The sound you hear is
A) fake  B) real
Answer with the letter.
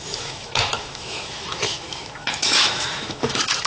A